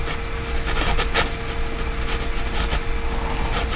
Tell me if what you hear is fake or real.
real